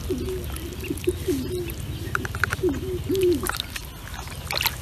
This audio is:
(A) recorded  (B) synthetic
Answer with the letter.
A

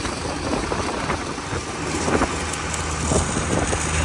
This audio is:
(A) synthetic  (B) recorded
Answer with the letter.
B